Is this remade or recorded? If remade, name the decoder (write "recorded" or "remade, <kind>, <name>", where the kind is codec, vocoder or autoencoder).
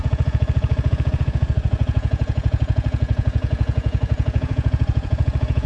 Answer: remade, vocoder, Vocos